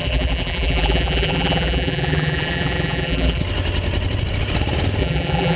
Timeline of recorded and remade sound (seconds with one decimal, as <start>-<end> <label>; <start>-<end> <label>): 0.0-3.4 remade; 3.4-5.0 recorded; 5.0-5.6 remade